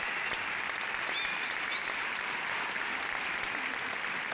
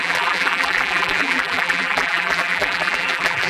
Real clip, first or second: first